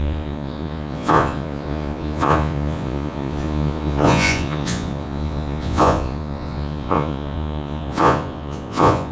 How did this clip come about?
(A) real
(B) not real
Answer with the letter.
B